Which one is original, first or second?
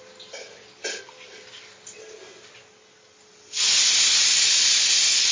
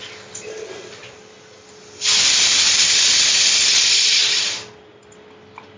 first